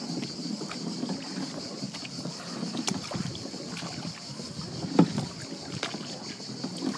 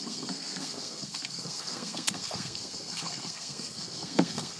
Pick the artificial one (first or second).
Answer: second